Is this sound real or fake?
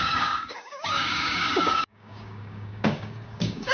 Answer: fake